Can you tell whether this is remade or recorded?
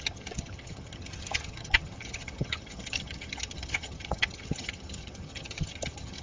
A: remade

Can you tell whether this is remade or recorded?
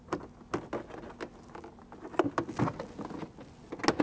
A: recorded